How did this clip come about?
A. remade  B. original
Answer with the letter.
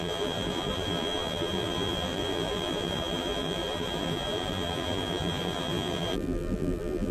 A